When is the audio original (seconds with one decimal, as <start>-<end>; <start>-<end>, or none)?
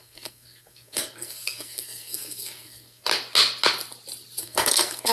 3.1-4.4